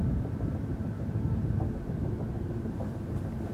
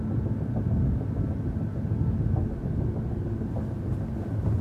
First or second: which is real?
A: second